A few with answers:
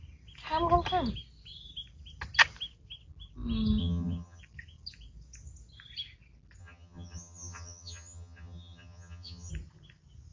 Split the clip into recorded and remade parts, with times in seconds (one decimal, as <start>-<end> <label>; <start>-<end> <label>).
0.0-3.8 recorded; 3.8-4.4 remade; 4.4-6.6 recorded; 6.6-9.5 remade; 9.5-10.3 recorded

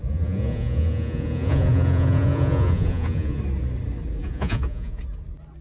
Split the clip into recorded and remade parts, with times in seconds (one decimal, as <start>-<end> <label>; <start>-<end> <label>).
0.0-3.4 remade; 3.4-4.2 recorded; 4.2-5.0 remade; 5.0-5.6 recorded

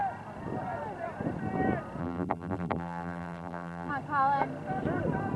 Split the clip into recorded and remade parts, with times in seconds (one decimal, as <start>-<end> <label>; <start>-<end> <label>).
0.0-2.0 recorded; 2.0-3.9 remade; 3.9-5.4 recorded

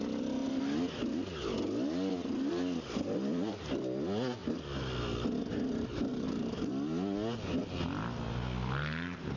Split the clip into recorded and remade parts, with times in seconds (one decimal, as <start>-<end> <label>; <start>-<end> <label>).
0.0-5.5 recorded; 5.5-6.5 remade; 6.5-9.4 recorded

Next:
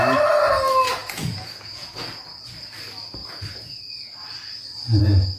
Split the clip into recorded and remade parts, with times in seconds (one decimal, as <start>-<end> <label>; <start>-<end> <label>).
0.0-1.0 recorded; 1.0-1.9 remade; 1.9-3.2 recorded; 3.2-3.8 remade; 3.8-5.4 recorded

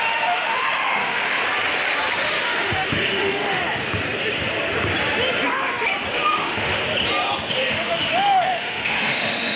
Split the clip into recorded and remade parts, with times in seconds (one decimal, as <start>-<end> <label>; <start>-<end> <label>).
0.0-1.4 remade; 1.4-2.4 recorded; 2.4-3.6 remade; 3.6-6.1 recorded; 6.1-6.8 remade; 6.8-7.5 recorded; 7.5-9.6 remade